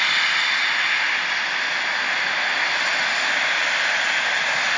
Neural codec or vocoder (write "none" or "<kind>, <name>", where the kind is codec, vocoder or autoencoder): none